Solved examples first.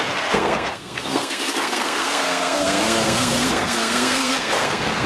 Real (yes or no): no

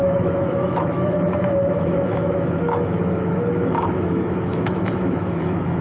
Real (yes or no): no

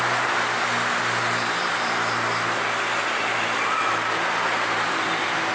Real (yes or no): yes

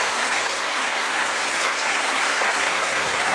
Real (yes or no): no